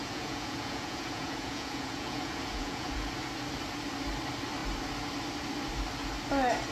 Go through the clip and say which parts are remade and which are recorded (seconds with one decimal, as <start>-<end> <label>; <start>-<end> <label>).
0.0-3.1 remade; 3.1-6.7 recorded